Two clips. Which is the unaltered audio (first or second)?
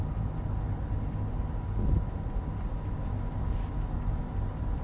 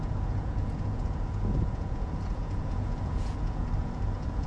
first